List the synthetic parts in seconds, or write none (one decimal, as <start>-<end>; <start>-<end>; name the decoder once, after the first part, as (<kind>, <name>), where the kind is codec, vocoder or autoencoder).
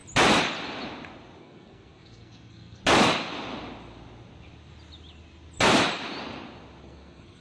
1.4-2.8 (codec, SNAC); 6.8-7.4